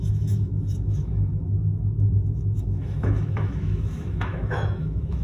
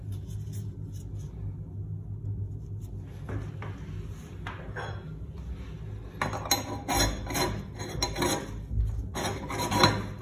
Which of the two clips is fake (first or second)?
first